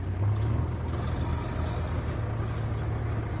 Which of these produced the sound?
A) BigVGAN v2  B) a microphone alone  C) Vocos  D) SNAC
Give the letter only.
B